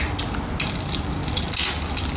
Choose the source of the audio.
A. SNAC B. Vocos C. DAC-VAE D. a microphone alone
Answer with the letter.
D